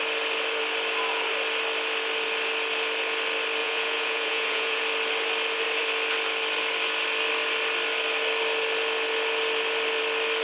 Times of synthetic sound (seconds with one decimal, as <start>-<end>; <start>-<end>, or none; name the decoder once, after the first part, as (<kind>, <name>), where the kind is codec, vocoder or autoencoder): 3.6-4.8 (vocoder, Vocos)